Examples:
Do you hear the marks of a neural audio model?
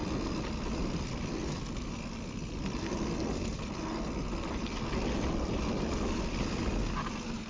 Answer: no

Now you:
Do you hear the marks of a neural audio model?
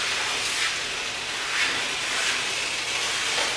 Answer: no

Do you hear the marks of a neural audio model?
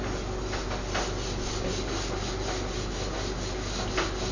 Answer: no